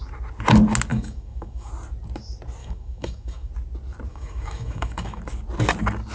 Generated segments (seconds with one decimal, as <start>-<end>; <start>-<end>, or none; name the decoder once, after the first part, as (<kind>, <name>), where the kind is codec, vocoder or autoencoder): 0.9-1.7 (autoencoder, DAC-VAE); 2.6-3.5; 4.1-5.2